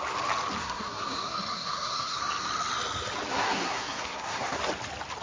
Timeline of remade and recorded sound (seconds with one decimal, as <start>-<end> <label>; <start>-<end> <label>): 0.0-0.6 recorded; 0.6-2.2 remade; 2.2-3.3 recorded; 3.3-4.6 remade; 4.6-5.2 recorded